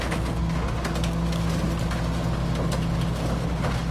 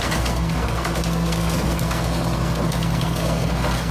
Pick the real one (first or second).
first